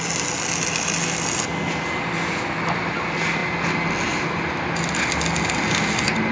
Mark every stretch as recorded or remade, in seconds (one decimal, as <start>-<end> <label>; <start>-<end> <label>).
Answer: 0.0-6.3 recorded